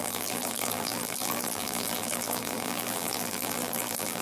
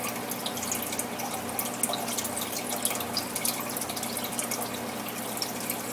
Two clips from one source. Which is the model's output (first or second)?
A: first